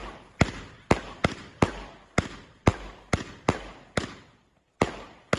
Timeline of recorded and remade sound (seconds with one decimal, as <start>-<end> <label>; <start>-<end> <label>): 0.0-5.4 recorded